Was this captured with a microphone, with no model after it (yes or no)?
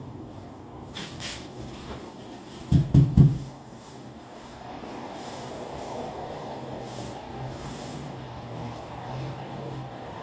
no